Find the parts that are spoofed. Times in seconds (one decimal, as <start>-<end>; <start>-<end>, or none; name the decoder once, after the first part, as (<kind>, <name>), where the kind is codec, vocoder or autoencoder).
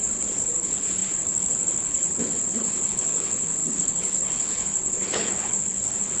0.0-6.2 (codec, HILCodec)